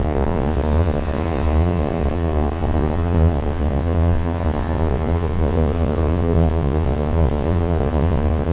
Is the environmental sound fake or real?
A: fake